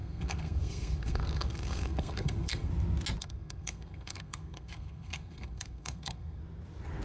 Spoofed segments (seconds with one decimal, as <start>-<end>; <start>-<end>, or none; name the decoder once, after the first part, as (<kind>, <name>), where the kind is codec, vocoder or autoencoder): 0.0-2.7 (codec, SNAC); 3.2-6.4